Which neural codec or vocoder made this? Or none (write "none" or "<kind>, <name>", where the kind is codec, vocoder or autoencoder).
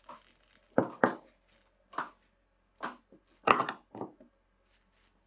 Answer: none